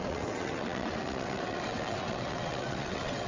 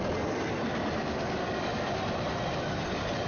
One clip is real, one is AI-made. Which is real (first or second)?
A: second